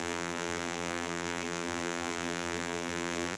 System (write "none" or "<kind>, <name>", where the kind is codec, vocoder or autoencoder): vocoder, BigVGAN v2